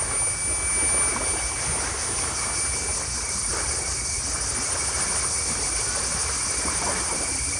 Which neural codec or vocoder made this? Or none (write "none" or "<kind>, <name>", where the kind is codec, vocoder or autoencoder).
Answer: none